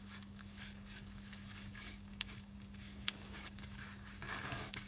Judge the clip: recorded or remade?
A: remade